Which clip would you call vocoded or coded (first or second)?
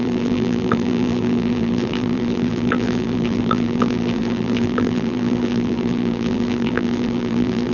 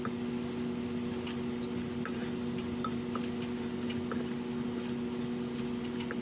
first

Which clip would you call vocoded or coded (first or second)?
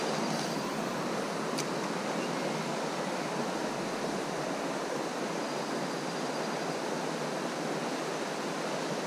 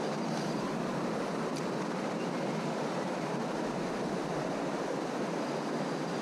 second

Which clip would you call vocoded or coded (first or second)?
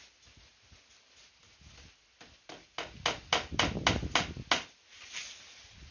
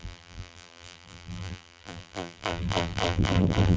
second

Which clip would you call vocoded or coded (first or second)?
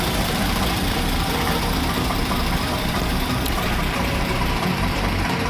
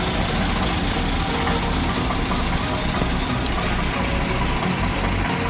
first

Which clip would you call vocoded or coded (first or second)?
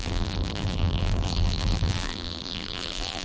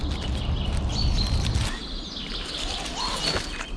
first